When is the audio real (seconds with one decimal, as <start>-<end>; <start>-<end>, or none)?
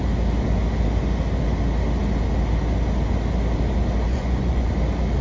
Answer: 0.0-4.1; 4.7-5.2